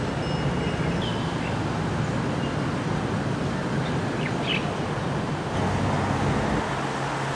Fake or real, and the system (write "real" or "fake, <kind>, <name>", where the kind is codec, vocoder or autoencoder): real